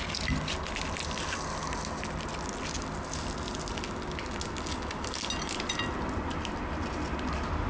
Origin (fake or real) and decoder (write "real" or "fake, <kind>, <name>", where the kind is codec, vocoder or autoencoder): real